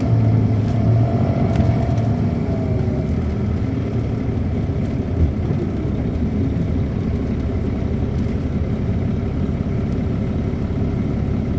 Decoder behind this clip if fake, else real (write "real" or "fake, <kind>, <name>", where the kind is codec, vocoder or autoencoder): real